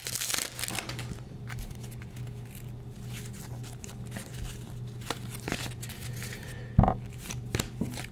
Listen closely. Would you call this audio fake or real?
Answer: real